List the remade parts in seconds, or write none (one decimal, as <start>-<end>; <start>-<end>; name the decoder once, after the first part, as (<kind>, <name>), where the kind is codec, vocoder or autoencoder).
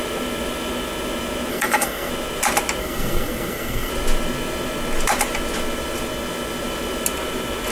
1.5-2.1 (codec, SNAC); 2.8-3.9